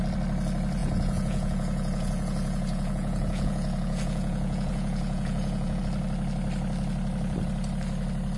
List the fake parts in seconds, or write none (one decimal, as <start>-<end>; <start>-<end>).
0.8-5.8